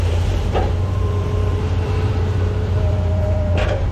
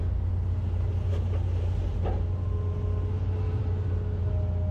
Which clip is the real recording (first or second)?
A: second